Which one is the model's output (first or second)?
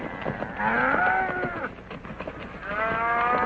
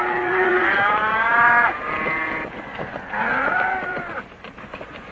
second